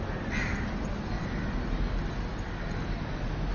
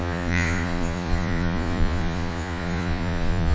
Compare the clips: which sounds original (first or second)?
first